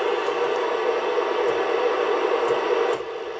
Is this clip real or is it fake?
real